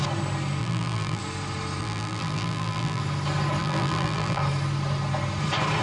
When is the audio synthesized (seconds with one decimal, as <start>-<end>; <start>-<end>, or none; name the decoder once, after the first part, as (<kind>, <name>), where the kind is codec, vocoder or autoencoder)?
0.6-1.2 (vocoder, BigVGAN v2); 1.8-3.0; 3.6-4.4